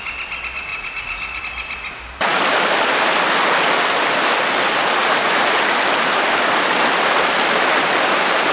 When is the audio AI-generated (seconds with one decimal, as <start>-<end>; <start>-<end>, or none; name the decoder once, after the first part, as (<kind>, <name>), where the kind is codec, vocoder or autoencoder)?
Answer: 0.7-1.4 (vocoder, Vocos); 5.0-5.6